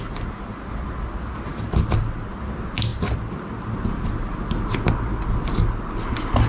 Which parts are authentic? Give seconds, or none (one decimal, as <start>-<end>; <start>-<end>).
0.0-6.5